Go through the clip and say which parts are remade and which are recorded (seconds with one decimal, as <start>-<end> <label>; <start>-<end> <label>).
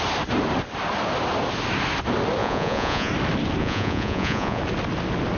0.0-2.4 recorded; 2.4-3.1 remade; 3.1-3.6 recorded; 3.6-4.6 remade; 4.6-5.4 recorded